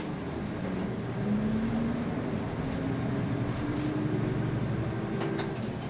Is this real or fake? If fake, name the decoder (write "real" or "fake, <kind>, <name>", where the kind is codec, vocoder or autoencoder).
real